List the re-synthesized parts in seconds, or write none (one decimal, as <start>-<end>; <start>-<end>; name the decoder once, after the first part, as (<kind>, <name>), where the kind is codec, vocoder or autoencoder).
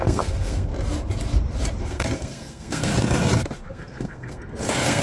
0.0-0.7 (codec, SNAC); 1.8-2.9; 3.7-5.0